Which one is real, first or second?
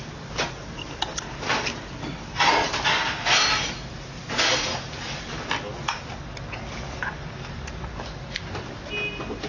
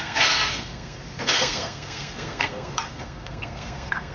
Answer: first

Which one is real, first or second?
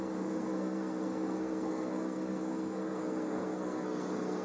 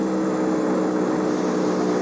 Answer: second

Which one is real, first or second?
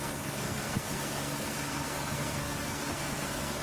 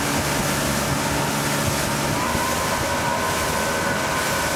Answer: second